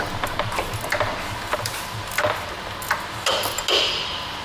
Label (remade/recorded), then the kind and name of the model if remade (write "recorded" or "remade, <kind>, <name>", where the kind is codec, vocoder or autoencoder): recorded